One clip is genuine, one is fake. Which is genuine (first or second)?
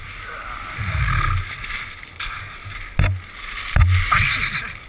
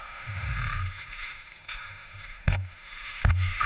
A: first